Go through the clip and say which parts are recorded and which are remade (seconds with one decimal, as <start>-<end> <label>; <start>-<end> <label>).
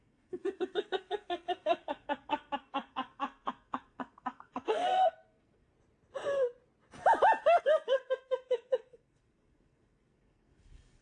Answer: 0.0-5.7 remade; 5.7-7.6 recorded; 7.6-11.0 remade